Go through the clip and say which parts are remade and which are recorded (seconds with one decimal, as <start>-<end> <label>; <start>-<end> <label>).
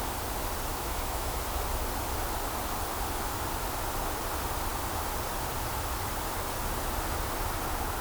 0.0-0.7 recorded; 0.7-1.4 remade; 1.4-8.0 recorded